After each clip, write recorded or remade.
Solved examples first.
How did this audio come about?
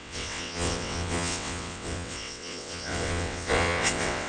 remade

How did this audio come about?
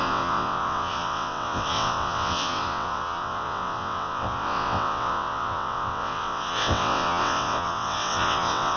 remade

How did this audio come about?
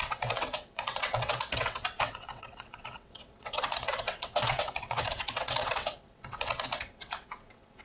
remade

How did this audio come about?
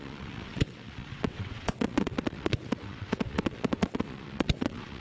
remade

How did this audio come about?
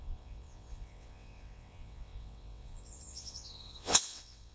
remade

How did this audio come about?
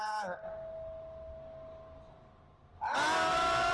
recorded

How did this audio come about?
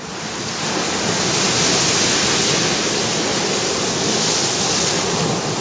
recorded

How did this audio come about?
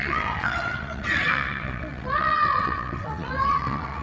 remade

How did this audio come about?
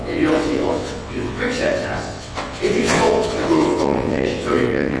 remade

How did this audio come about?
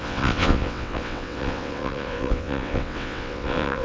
remade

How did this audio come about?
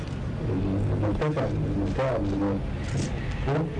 recorded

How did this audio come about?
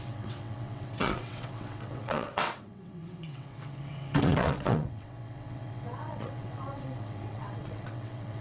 remade